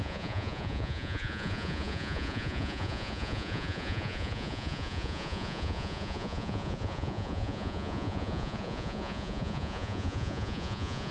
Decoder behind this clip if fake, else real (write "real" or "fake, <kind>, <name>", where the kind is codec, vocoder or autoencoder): fake, vocoder, Vocos